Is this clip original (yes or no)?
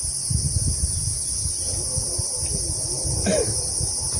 no